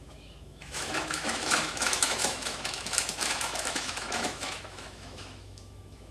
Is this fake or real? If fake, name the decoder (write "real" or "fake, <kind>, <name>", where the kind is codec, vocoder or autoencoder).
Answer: fake, autoencoder, DAC-VAE